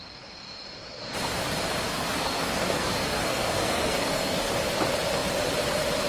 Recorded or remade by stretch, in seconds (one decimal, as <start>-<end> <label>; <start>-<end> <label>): 0.0-1.9 recorded; 1.9-4.5 remade; 4.5-6.1 recorded